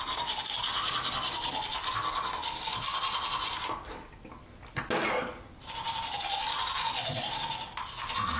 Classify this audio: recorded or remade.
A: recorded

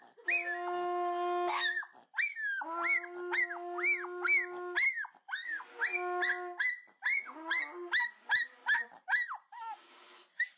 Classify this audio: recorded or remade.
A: recorded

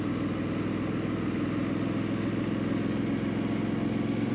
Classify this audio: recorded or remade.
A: recorded